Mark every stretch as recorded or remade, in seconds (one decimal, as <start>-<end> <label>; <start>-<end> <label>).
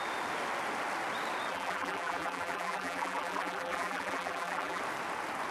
0.0-1.5 recorded; 1.5-4.8 remade; 4.8-5.5 recorded